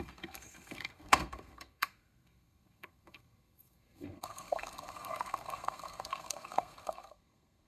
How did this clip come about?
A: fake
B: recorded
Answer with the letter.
A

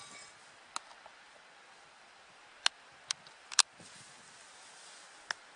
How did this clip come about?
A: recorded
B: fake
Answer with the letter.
A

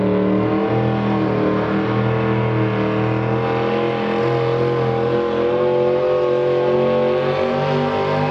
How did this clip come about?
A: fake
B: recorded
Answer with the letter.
B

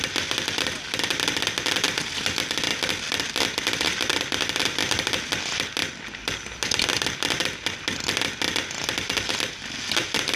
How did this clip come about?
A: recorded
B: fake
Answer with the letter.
A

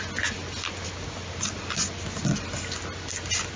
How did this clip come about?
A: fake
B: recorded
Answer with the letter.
B